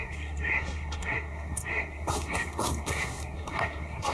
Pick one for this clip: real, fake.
fake